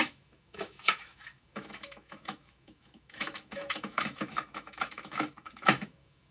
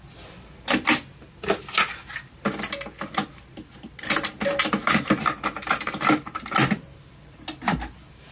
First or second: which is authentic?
second